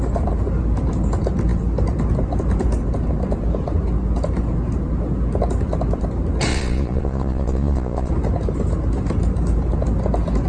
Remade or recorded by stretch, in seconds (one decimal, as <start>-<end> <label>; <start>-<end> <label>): 0.0-6.5 recorded; 6.5-8.1 remade; 8.1-10.5 recorded